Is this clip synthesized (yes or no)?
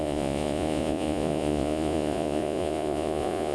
yes